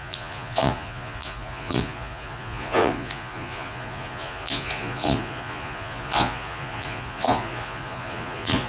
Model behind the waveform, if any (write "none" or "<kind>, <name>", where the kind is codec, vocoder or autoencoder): vocoder, Vocos